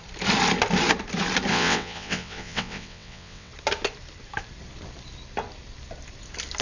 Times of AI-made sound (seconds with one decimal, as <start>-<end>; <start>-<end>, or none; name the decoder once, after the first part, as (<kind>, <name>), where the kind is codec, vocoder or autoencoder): 1.5-3.5 (vocoder, WaveNeXt)